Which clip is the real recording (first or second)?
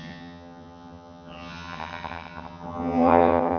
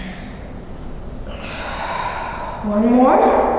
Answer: second